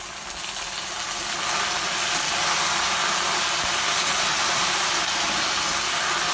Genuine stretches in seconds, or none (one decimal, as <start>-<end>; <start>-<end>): 0.0-4.4; 4.9-6.3